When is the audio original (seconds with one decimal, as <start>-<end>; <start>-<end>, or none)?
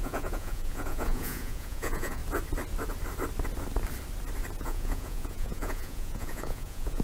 2.2-4.6